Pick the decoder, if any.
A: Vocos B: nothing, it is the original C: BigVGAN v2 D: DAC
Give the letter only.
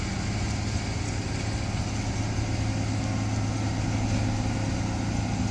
B